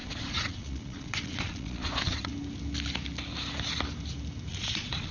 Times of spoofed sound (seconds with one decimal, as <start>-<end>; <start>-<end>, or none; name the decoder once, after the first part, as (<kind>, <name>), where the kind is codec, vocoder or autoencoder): 0.0-2.3 (vocoder, Vocos); 4.5-5.1